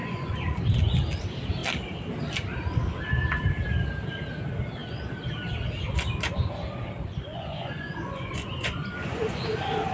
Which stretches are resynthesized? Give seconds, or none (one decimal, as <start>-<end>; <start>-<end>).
0.0-0.6; 7.3-9.4